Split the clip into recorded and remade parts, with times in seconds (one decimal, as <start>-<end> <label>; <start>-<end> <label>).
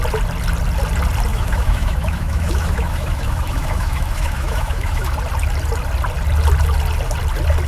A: 0.0-1.3 recorded; 1.3-5.1 remade; 5.1-7.7 recorded